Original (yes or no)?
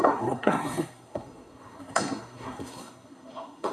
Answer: no